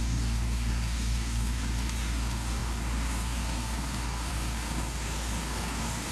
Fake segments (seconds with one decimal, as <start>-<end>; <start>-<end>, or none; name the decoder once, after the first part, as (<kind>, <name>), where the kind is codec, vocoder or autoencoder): 0.0-6.1 (codec, DAC)

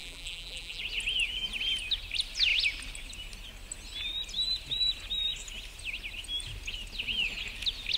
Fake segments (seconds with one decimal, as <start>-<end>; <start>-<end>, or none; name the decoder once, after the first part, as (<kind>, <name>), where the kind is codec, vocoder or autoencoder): 0.0-0.8 (vocoder, BigVGAN v2)

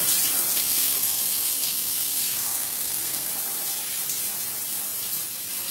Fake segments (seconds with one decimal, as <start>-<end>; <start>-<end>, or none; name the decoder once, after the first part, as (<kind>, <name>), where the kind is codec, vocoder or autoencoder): 0.5-3.3 (codec, SNAC)

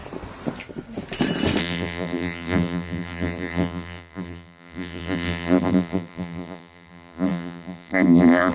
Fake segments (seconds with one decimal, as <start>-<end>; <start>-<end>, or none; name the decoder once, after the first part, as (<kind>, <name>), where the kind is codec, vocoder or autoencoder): 1.6-8.5 (vocoder, BigVGAN v2)

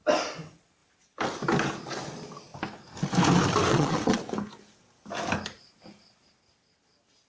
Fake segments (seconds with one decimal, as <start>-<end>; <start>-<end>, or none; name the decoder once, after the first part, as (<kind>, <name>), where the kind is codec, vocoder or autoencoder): 3.7-4.3 (vocoder, Vocos)

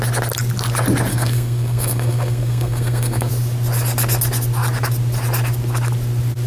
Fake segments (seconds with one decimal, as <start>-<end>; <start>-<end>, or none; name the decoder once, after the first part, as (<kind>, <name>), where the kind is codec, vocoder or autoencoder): 1.1-3.3 (codec, SNAC)

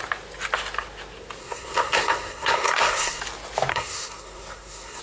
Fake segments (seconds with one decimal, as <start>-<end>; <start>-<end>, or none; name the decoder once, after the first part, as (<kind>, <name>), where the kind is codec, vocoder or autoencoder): 1.4-3.2 (codec, SNAC); 3.7-5.0